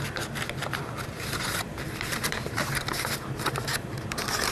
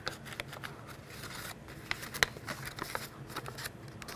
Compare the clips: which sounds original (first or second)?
second